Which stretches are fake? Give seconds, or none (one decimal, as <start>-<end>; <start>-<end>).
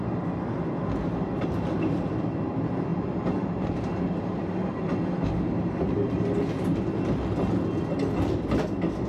2.9-5.7